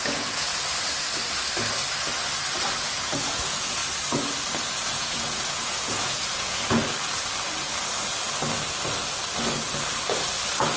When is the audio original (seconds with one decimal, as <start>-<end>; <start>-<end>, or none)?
0.5-2.8; 3.8-4.7; 6.8-10.8